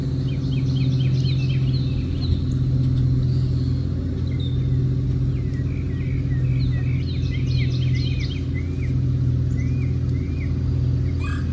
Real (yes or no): yes